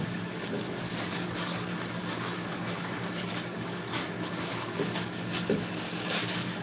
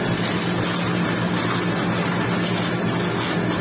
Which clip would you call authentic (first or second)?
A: second